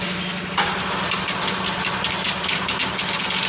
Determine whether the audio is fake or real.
real